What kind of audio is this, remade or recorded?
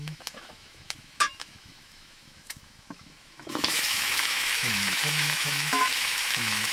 remade